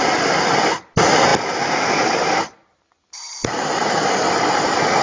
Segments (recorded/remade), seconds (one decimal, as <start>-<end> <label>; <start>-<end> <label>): 0.0-5.0 recorded